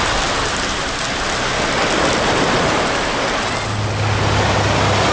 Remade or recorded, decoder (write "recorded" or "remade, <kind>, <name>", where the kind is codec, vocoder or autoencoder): recorded